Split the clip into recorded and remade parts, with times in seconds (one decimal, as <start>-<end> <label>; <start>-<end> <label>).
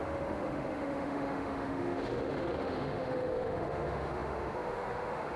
0.0-5.4 remade